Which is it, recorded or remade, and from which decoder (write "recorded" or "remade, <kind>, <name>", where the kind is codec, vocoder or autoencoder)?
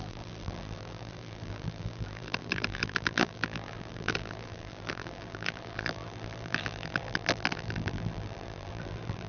remade, vocoder, BigVGAN v2